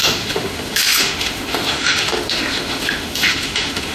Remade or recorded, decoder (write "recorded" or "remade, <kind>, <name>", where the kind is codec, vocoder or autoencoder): remade, autoencoder, DAC-VAE